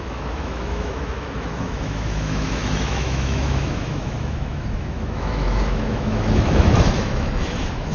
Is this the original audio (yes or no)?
no